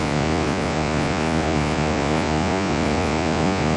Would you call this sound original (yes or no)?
no